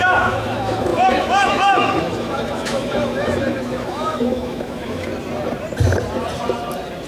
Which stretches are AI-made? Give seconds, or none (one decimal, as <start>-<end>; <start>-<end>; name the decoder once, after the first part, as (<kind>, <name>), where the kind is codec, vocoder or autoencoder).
0.0-5.1 (autoencoder, DAC-VAE)